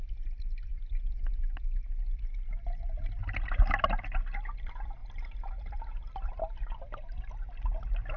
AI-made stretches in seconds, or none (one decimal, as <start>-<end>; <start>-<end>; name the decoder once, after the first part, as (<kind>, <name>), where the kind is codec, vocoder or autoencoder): 0.7-1.3 (vocoder, BigVGAN v2); 5.0-6.4